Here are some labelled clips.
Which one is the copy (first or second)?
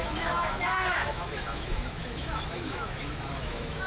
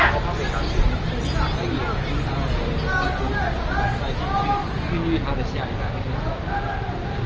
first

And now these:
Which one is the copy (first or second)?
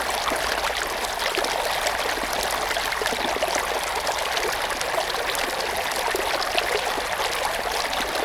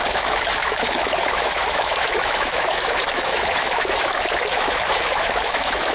second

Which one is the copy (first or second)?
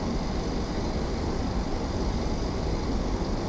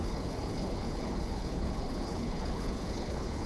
second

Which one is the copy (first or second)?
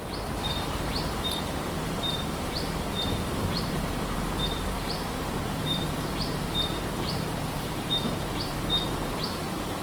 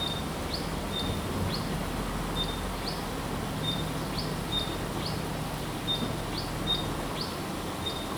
first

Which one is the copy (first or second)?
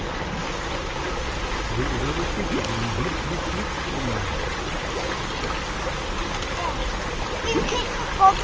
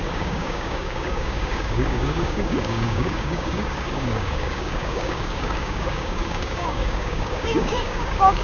second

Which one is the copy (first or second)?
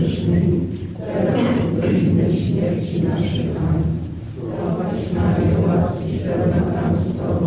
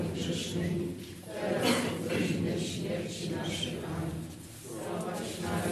first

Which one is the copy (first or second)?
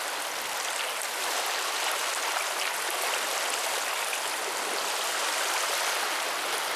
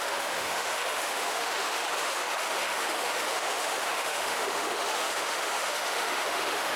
second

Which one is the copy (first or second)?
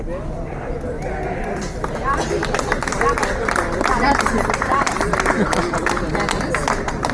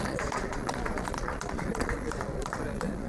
second